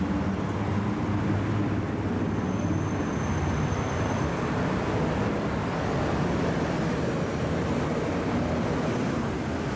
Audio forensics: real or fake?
real